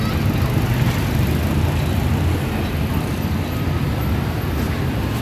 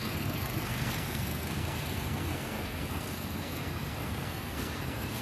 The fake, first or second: second